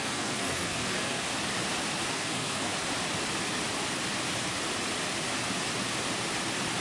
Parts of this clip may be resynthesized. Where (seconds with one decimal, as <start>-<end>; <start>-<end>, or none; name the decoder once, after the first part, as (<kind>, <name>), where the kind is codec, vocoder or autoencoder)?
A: 0.0-1.3 (codec, SNAC); 2.1-2.7